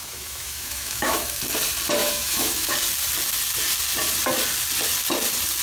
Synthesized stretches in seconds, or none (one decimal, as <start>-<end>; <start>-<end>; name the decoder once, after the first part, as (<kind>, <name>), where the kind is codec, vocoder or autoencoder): 0.0-1.4 (autoencoder, DAC-VAE); 2.0-2.7